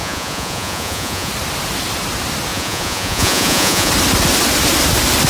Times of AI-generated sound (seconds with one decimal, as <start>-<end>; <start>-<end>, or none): 0.0-1.3; 2.5-3.9